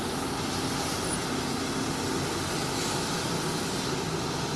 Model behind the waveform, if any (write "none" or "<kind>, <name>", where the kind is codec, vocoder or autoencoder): none